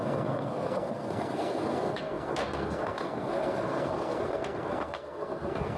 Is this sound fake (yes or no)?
yes